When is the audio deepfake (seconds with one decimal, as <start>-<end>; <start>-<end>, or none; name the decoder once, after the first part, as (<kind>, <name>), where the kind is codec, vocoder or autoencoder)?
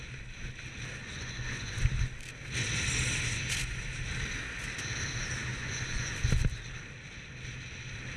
1.0-1.8 (vocoder, Vocos); 5.5-6.1